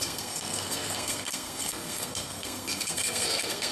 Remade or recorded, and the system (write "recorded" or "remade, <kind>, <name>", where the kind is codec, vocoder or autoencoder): remade, codec, SNAC